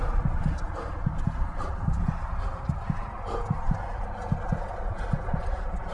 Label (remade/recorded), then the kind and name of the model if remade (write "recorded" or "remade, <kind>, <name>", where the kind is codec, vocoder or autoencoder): recorded